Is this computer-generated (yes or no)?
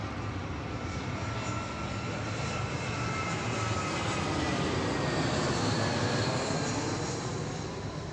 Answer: no